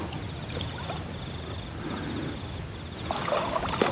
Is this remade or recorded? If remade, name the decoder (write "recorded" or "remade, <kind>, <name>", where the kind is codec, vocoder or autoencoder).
recorded